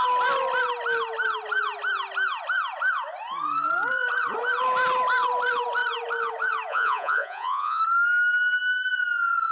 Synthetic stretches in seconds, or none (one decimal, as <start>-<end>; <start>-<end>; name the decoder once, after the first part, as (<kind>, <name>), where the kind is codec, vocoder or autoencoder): 6.7-7.8 (vocoder, Vocos)

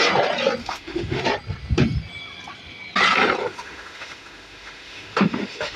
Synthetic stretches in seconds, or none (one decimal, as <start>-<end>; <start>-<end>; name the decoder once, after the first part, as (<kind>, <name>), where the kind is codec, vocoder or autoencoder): 0.6-1.2 (autoencoder, DAC-VAE); 3.4-5.8

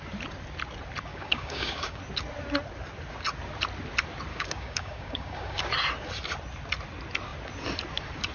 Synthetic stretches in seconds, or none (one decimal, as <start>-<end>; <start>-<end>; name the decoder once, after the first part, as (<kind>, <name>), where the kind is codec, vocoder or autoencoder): 1.1-2.0 (codec, DAC); 4.3-5.6

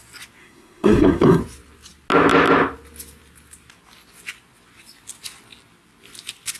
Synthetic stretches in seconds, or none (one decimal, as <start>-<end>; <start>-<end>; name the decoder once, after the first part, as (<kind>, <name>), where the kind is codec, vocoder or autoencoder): 0.4-1.4 (codec, SNAC)